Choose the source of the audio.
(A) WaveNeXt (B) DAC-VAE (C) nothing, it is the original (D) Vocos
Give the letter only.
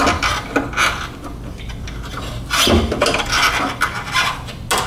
C